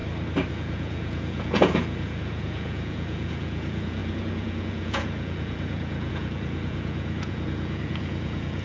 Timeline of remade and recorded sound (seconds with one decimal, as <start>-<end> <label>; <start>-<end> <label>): 0.0-0.5 recorded; 0.5-8.6 remade